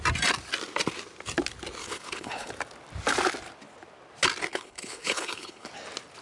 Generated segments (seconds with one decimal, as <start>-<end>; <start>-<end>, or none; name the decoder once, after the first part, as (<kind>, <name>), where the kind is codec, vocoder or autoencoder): 1.8-2.5 (codec, HILCodec); 4.5-5.7

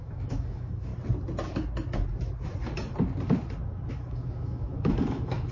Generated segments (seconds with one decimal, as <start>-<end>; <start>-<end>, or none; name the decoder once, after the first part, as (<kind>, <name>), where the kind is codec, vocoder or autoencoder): 0.0-0.9 (autoencoder, DAC-VAE); 3.9-5.5

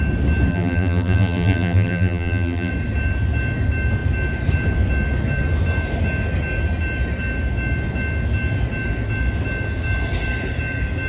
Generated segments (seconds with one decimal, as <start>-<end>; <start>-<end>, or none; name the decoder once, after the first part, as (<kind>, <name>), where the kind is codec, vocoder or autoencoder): 0.5-2.7 (vocoder, BigVGAN v2)

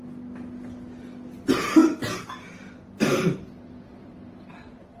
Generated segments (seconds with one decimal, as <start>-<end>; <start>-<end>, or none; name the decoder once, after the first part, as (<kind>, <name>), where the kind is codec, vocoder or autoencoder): none

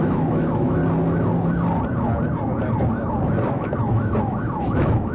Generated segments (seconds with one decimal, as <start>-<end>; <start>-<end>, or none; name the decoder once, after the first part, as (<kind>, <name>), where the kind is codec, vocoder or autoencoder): 0.0-0.8 (autoencoder, DAC-VAE); 3.5-5.1